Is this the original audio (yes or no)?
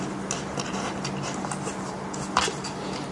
yes